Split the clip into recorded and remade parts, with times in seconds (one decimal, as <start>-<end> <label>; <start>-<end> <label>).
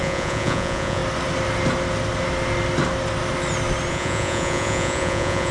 0.0-1.0 remade; 1.0-3.9 recorded; 3.9-5.5 remade